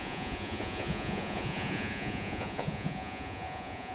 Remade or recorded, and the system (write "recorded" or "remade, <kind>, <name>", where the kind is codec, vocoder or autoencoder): remade, vocoder, Vocos